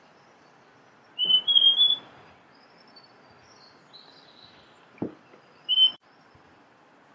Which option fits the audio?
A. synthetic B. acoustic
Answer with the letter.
A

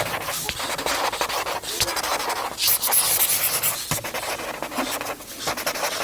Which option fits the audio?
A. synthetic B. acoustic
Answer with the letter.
B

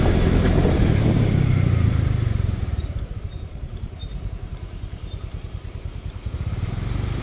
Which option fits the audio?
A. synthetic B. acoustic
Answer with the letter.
A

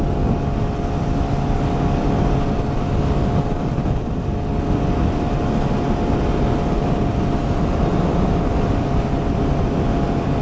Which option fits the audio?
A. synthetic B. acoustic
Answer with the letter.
B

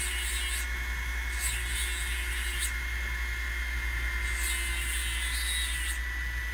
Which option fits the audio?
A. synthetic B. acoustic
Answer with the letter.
B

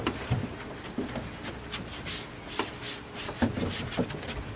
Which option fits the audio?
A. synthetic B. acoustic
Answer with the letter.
B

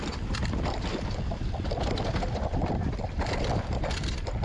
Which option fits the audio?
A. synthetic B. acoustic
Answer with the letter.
A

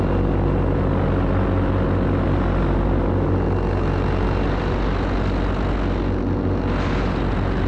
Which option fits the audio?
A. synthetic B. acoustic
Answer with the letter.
B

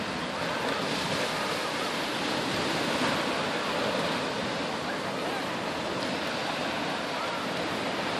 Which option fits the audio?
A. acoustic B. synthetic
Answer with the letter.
A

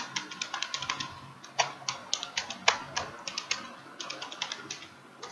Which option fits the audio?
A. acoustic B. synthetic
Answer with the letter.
A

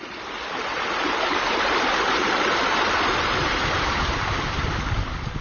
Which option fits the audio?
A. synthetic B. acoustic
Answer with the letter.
A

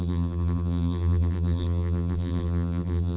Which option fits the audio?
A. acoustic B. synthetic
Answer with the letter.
B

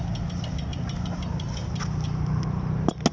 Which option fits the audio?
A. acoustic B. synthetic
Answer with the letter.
A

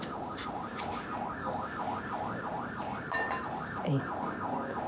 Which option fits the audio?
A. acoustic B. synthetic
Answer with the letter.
B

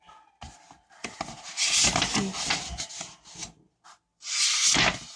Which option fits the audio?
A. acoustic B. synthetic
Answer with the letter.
A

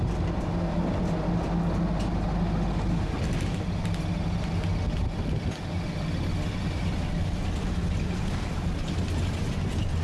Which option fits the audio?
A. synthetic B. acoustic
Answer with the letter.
B